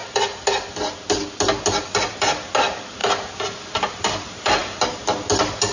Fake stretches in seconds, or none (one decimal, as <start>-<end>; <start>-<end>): none